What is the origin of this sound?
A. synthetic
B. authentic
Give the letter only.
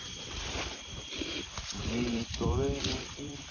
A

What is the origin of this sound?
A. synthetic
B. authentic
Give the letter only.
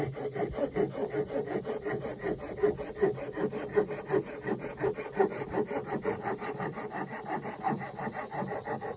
B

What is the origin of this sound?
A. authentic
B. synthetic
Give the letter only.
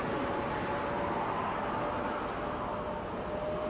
A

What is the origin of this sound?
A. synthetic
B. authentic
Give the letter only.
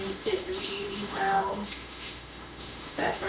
A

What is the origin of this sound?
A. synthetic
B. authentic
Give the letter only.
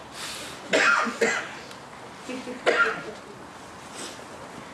B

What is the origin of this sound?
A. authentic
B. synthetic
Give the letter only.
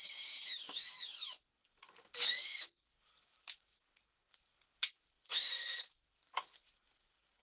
B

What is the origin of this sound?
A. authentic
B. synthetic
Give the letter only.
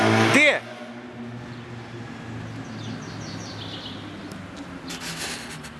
A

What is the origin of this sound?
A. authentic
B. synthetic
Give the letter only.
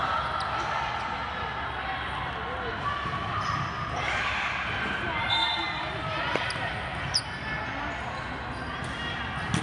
A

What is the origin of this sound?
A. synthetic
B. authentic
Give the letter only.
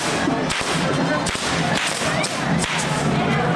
B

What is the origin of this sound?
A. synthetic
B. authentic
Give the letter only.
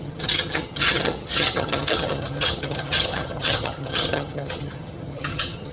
A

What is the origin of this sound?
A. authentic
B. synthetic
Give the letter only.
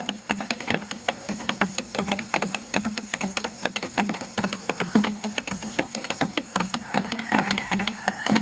B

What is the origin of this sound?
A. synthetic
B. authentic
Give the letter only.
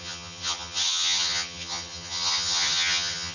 A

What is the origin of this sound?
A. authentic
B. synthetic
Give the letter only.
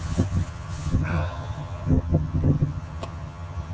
B